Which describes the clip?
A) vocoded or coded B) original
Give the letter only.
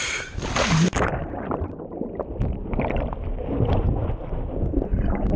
B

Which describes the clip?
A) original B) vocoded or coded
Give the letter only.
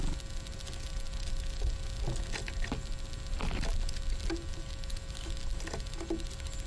A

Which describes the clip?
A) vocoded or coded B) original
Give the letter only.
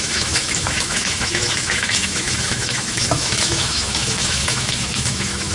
A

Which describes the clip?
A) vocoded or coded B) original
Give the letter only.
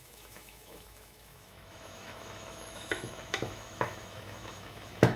A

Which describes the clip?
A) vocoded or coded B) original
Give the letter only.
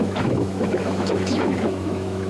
A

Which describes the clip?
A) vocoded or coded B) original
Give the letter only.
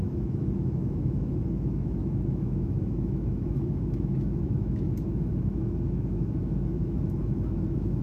A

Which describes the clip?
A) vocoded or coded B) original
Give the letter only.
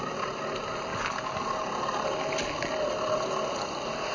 B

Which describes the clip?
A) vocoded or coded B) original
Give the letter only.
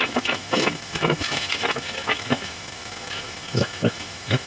A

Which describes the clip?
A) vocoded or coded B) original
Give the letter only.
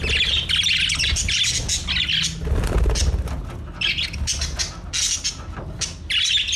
B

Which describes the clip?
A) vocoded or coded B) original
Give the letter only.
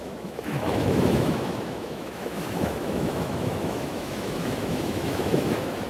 A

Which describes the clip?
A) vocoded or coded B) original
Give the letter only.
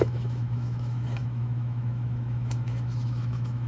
A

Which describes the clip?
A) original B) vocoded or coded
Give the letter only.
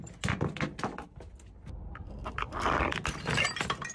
A